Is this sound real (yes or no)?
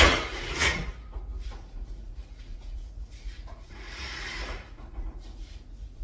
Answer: no